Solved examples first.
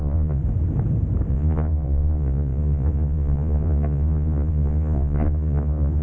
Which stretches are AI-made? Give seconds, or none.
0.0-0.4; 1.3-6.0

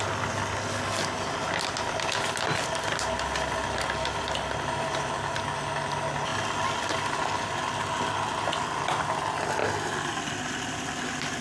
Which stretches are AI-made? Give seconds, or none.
none

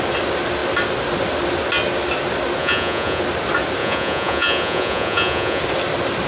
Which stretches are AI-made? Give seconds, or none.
2.6-3.2; 3.8-5.6

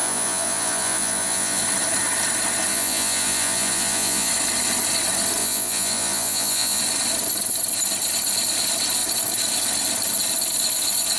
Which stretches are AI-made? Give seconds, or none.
0.0-1.6; 2.7-4.3; 5.4-6.8

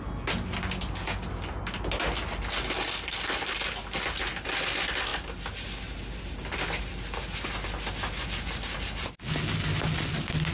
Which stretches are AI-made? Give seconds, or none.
none

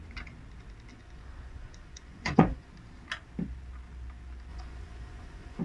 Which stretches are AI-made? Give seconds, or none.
0.9-2.7; 4.5-5.6

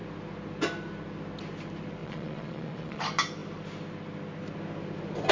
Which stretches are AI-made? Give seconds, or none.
2.0-3.0

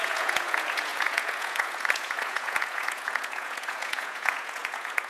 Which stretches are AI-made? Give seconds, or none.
0.0-5.1